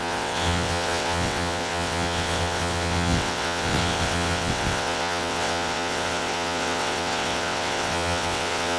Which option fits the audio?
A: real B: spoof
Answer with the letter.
B